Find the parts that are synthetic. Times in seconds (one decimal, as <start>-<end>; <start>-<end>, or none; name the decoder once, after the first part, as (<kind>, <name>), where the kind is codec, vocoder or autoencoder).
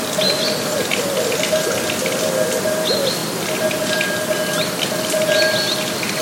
none